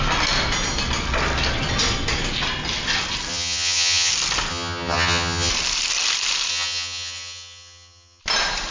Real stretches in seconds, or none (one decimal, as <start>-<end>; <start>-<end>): 0.0-3.3; 4.1-4.5; 5.5-6.5; 8.2-8.7